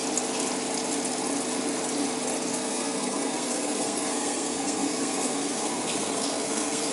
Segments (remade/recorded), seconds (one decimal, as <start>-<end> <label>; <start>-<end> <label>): 0.0-2.5 recorded; 2.5-6.9 remade